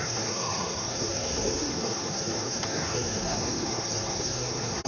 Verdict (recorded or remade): remade